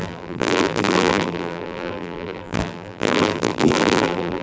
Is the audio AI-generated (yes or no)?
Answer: yes